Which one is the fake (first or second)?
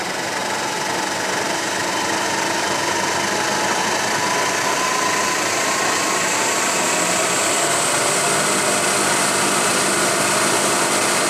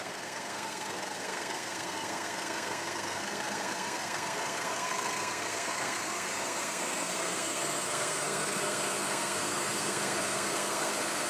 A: second